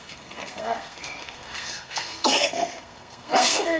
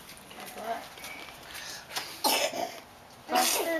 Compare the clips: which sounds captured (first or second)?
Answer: second